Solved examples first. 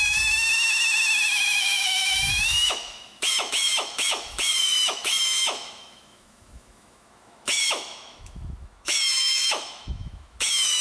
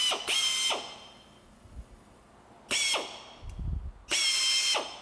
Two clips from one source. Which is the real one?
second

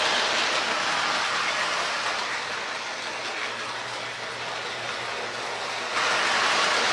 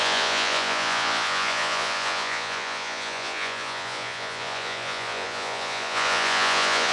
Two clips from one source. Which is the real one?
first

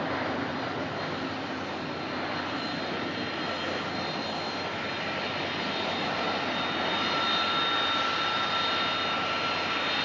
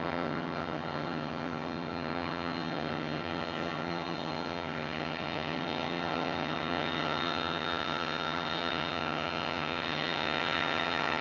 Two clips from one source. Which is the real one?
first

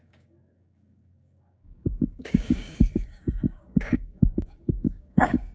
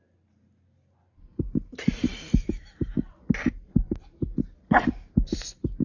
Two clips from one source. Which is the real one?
second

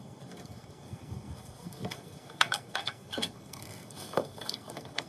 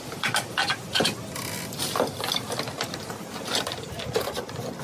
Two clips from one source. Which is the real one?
second